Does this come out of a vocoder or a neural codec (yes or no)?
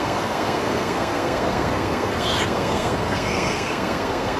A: yes